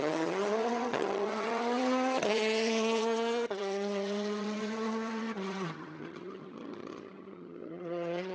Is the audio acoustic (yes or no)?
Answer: no